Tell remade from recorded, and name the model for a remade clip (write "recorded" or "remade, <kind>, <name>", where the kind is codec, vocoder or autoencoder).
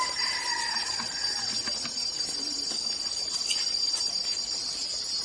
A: remade, vocoder, BigVGAN v2